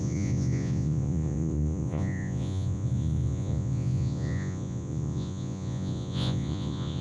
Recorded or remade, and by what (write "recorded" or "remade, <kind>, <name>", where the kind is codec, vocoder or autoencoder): remade, vocoder, Vocos